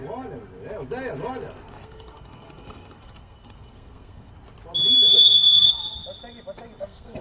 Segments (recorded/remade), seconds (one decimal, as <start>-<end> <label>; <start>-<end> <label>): 0.0-1.7 recorded; 1.7-4.3 remade; 4.3-5.1 recorded; 5.1-5.8 remade; 5.8-6.8 recorded; 6.8-7.2 remade